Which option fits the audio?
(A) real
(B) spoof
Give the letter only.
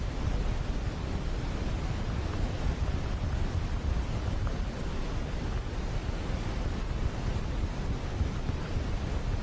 A